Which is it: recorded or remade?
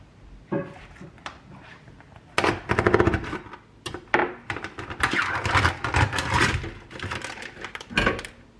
recorded